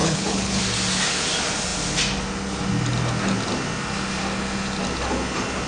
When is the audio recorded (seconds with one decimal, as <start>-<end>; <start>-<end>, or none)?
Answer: 0.6-5.7